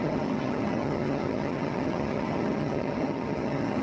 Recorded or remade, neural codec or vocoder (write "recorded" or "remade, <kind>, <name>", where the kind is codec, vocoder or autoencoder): remade, vocoder, HiFi-GAN